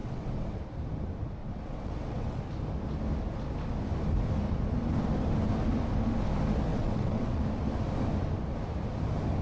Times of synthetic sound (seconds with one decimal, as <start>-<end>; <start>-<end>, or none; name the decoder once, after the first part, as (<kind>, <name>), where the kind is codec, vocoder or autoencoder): 0.0-0.6 (vocoder, WaveNeXt); 1.4-2.4; 6.7-7.4